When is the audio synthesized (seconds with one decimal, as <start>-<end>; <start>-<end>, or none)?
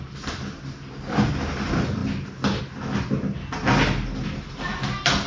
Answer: none